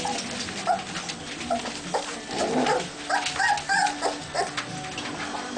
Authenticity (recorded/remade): recorded